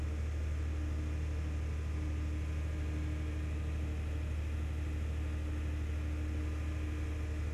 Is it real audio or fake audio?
real